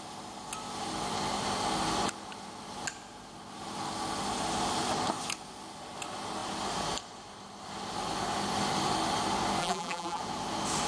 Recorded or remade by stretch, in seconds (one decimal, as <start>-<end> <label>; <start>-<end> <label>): 0.0-9.6 recorded; 9.6-10.2 remade; 10.2-10.9 recorded